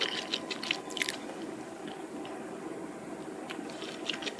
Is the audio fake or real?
real